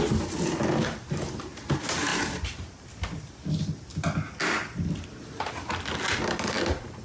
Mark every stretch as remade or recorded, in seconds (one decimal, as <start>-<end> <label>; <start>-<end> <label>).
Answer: 0.0-7.0 recorded